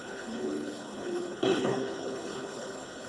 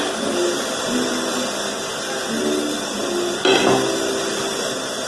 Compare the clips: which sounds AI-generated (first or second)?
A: first